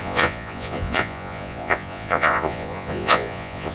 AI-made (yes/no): yes